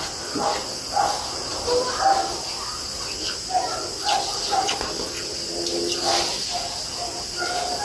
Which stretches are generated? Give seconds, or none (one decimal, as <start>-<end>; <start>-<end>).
none